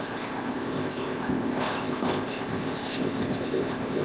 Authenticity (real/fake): fake